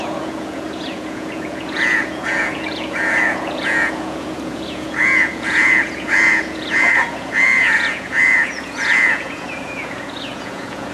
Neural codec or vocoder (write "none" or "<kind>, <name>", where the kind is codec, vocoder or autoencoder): vocoder, Vocos